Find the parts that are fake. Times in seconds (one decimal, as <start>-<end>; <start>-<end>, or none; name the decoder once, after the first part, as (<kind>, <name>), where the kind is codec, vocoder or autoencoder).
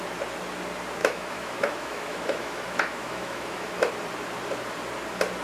1.0-3.9 (autoencoder, DAC-VAE)